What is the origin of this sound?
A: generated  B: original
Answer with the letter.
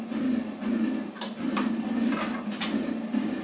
B